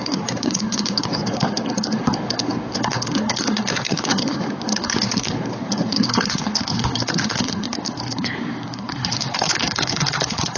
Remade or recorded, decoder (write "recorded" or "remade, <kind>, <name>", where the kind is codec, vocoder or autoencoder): remade, codec, SNAC